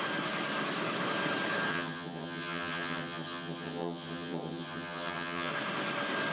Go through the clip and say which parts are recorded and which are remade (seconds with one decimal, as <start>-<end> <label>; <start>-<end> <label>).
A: 0.0-1.7 recorded; 1.7-5.5 remade; 5.5-6.3 recorded